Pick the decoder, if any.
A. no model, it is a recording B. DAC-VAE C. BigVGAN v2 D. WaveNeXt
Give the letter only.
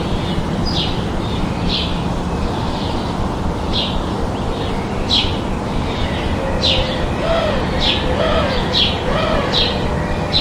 A